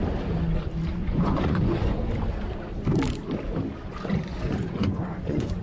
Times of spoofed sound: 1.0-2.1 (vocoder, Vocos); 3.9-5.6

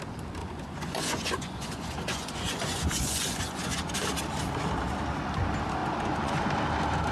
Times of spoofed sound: 0.4-3.8 (vocoder, Vocos); 5.8-6.4

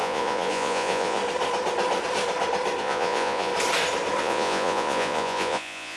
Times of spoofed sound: 0.0-1.2 (vocoder, Vocos); 2.8-3.5; 4.2-6.0

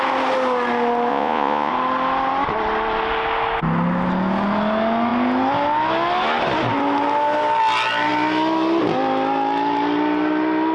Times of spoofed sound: 1.1-1.7 (vocoder, Vocos)